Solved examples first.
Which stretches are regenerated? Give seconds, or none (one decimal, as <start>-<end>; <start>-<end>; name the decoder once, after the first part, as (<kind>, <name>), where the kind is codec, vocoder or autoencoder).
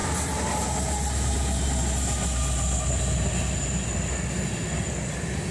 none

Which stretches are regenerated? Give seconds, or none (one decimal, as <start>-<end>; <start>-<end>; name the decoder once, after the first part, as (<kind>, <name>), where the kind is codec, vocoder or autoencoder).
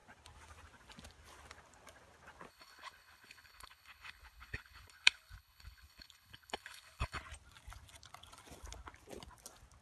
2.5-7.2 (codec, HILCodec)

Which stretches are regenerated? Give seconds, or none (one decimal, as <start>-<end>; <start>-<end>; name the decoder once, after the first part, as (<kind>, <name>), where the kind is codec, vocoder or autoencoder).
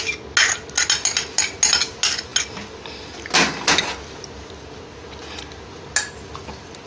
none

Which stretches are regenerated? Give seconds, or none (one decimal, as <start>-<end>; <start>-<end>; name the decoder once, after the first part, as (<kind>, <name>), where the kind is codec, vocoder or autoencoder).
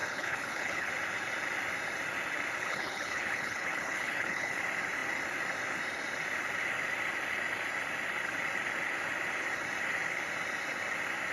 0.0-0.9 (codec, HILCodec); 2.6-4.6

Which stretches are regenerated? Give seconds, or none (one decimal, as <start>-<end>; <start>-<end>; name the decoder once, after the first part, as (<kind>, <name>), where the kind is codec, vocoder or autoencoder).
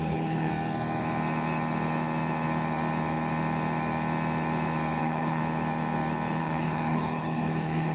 0.0-0.5 (codec, HILCodec); 5.0-5.4; 6.4-7.9